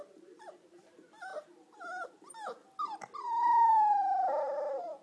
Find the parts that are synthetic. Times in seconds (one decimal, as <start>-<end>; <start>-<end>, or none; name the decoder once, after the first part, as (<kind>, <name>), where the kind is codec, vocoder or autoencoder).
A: 0.0-2.6 (vocoder, BigVGAN v2); 4.4-5.0